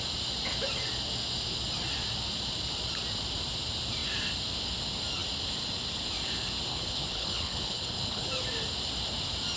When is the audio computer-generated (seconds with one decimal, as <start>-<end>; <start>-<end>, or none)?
6.7-8.3